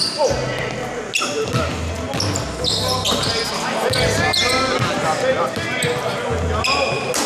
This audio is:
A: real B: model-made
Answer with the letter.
A